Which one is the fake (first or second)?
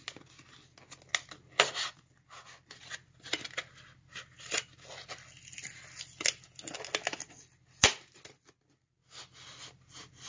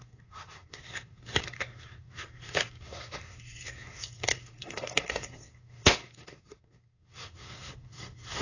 second